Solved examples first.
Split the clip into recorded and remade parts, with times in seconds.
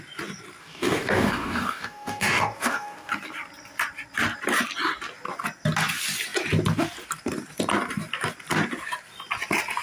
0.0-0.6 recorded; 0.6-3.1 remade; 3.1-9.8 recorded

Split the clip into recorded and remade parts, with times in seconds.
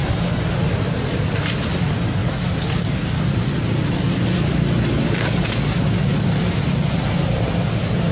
0.0-8.1 recorded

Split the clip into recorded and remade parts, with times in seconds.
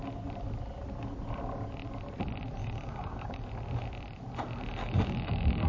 0.0-2.6 recorded; 2.6-3.4 remade; 3.4-4.8 recorded; 4.8-5.7 remade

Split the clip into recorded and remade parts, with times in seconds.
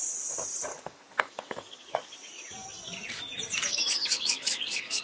0.0-0.7 recorded; 0.7-2.1 remade; 2.1-3.7 recorded; 3.7-5.0 remade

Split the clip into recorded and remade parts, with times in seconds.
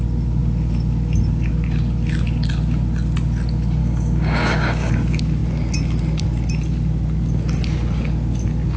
0.0-3.8 recorded; 3.8-4.9 remade; 4.9-8.8 recorded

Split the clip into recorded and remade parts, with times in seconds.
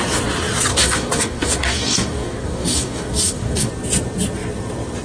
0.0-0.7 recorded; 0.7-3.7 remade; 3.7-5.0 recorded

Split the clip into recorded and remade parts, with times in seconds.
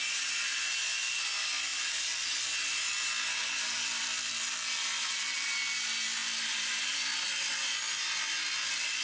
0.0-9.0 recorded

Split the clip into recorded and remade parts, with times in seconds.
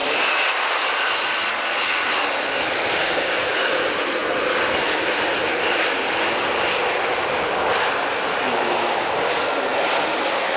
0.0-3.0 recorded; 3.0-3.7 remade; 3.7-10.6 recorded